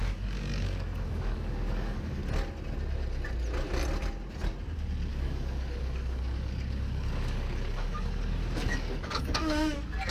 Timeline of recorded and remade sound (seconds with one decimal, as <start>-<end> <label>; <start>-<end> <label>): 0.0-2.2 remade; 2.2-5.1 recorded; 5.1-10.1 remade